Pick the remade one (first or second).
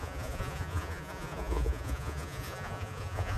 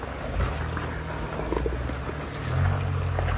first